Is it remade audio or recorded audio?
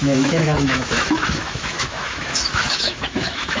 remade